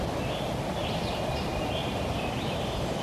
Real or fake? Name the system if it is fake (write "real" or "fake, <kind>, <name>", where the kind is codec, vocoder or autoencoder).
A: real